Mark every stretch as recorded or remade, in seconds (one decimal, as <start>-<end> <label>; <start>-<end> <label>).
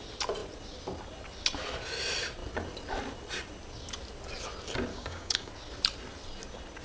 0.0-4.9 recorded; 4.9-5.5 remade; 5.5-6.8 recorded